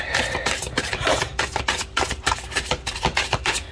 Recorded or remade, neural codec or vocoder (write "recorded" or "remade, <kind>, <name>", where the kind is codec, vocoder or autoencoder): remade, vocoder, BigVGAN v2